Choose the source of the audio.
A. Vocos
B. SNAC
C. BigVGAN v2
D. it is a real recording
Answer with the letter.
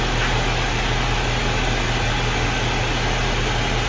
D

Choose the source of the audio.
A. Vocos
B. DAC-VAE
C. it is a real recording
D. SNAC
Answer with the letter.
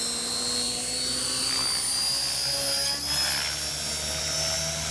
C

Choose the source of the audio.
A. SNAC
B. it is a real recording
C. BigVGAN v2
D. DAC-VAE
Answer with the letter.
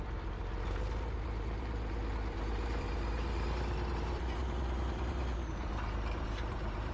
C